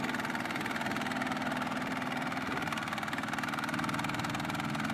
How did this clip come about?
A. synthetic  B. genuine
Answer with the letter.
A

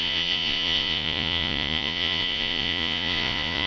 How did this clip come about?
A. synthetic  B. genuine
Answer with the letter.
A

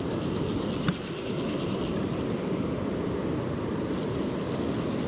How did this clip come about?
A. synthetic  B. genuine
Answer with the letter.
B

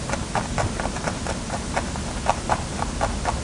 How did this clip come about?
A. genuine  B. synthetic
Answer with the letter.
A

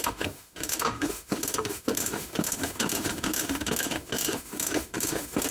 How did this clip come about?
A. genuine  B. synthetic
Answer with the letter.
B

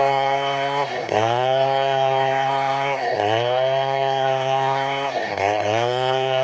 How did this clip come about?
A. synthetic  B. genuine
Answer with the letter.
A